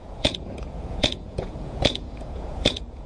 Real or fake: fake